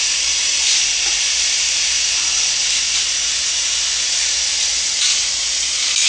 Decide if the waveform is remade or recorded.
remade